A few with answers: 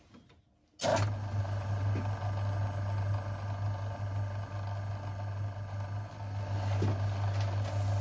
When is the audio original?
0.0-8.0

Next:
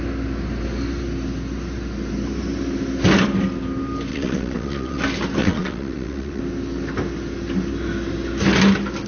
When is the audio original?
0.0-4.1; 5.0-5.4; 6.4-9.1

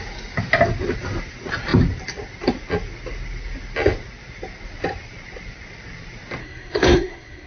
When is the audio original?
0.0-6.4

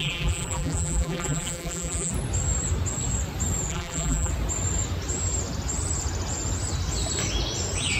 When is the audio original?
2.1-3.7; 4.3-8.0

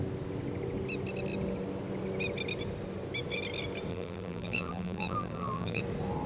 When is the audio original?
0.0-3.9; 5.8-6.3

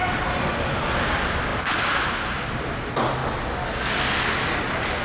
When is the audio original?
0.0-5.0